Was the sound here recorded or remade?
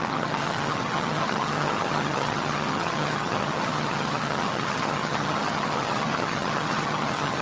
remade